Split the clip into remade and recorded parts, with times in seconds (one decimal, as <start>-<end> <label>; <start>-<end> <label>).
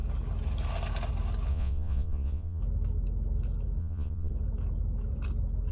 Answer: 0.0-1.5 recorded; 1.5-2.6 remade; 2.6-3.8 recorded; 3.8-4.3 remade; 4.3-5.7 recorded